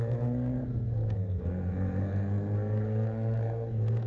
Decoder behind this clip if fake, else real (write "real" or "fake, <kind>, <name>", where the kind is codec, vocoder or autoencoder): fake, codec, SNAC